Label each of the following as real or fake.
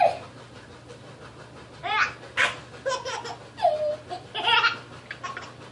real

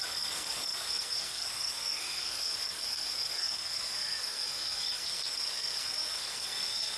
fake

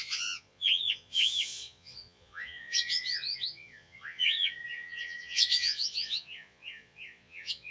fake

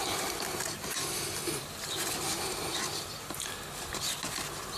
real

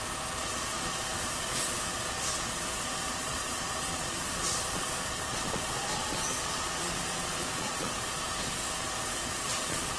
fake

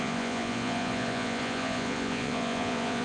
fake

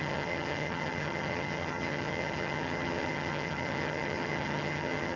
fake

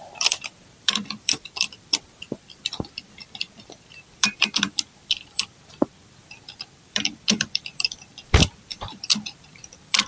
fake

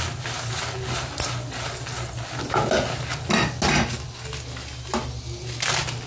real